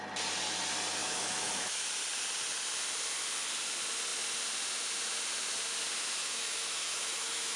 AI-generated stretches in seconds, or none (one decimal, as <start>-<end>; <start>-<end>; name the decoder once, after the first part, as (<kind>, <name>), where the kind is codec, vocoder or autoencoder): 1.0-1.9 (autoencoder, DAC-VAE); 6.2-7.6